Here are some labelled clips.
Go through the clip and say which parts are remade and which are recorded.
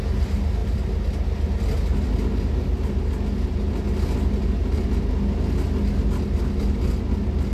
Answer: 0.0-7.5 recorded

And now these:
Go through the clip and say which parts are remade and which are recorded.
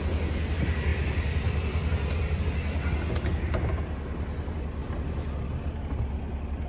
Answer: 0.0-6.7 recorded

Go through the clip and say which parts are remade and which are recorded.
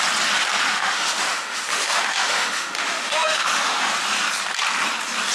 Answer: 0.0-0.7 recorded; 0.7-3.9 remade; 3.9-5.3 recorded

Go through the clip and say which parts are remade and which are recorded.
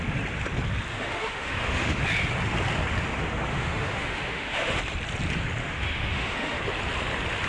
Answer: 0.0-0.9 recorded; 0.9-2.0 remade; 2.0-3.5 recorded; 3.5-4.8 remade; 4.8-5.6 recorded; 5.6-6.6 remade; 6.6-7.5 recorded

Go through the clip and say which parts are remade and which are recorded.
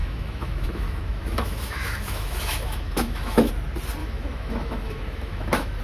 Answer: 0.0-3.5 remade; 3.5-4.0 recorded; 4.0-5.8 remade